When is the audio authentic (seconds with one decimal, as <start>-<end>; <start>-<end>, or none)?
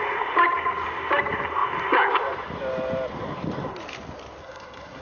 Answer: 0.0-4.4